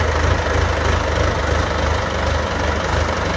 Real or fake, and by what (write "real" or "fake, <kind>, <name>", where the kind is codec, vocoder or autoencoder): real